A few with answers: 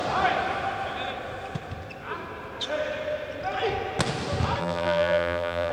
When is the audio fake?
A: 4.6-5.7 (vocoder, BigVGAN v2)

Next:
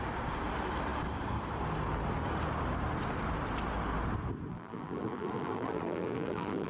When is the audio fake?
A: 4.5-6.7 (vocoder, BigVGAN v2)

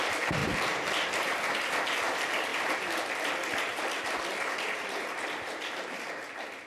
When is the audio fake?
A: 0.0-0.4 (vocoder, BigVGAN v2); 1.1-6.7

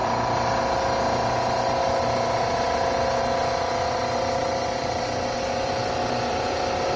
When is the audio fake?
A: 0.0-0.6 (vocoder, BigVGAN v2); 6.0-7.0

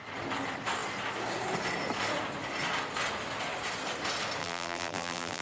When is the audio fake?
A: 4.4-5.4 (vocoder, BigVGAN v2)

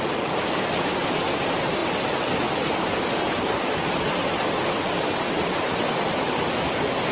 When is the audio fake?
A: 0.0-7.1 (vocoder, BigVGAN v2)

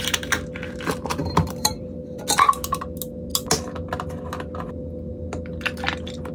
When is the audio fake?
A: 1.2-2.2 (vocoder, BigVGAN v2)